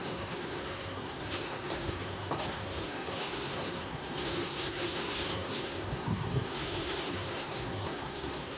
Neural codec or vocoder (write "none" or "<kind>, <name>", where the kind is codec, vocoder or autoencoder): codec, SNAC